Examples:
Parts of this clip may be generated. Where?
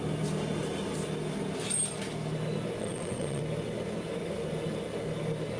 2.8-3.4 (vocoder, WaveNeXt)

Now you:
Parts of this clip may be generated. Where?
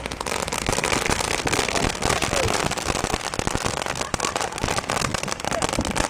none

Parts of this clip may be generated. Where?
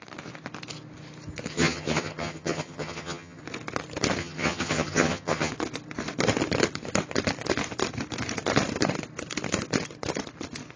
1.5-3.4 (vocoder, HiFi-GAN); 4.2-5.5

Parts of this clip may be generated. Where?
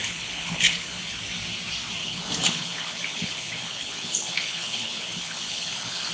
0.0-1.0 (codec, HILCodec); 2.0-6.1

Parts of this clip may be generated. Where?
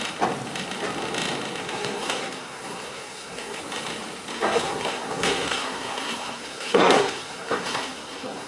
1.6-3.6 (codec, SNAC); 4.3-8.5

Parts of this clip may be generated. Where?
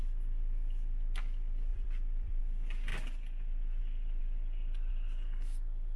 1.7-2.4 (vocoder, BigVGAN v2)